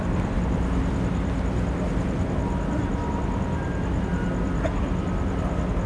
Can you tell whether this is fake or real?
real